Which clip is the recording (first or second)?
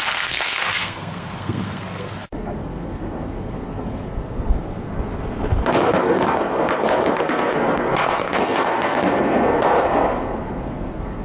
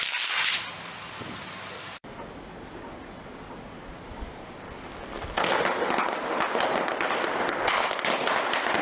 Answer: second